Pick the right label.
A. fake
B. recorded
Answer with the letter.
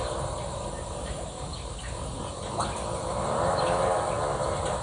B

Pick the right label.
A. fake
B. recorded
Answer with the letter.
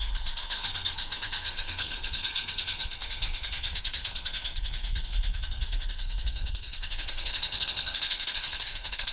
A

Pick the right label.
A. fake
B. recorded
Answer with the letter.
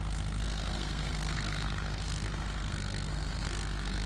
A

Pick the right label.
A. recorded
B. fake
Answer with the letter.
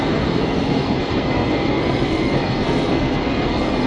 B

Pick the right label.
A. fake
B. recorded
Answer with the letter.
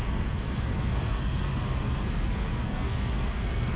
A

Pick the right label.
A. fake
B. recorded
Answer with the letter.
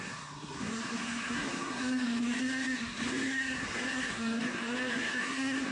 A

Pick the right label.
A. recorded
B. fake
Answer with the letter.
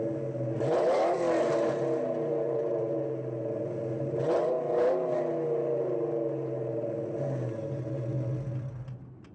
A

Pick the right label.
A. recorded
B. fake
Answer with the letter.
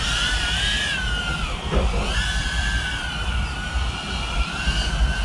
A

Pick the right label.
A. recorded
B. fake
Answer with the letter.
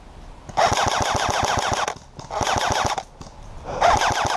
A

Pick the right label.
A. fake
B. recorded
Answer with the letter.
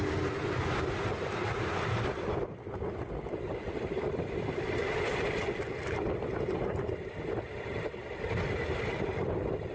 B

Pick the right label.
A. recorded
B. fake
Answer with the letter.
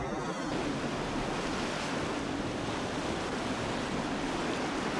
A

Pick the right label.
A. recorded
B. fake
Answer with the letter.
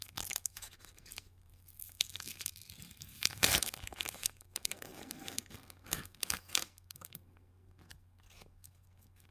B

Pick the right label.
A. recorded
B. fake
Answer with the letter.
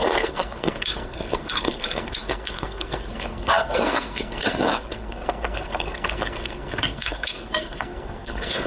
B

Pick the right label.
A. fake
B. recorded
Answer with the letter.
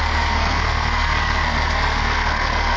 A